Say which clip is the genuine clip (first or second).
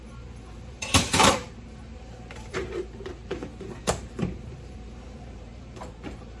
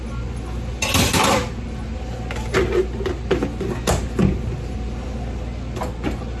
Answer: second